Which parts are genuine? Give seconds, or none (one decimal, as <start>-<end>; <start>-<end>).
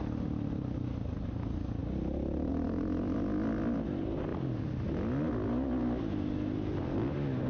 0.0-7.5